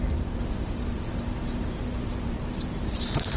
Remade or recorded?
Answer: remade